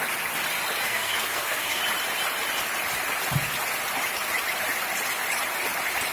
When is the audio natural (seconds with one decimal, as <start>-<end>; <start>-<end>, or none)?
0.0-0.8; 1.8-6.1